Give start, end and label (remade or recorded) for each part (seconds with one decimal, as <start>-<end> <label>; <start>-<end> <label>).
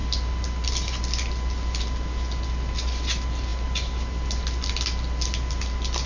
0.0-6.1 recorded